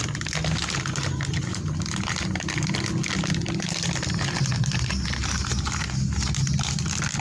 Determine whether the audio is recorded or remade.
recorded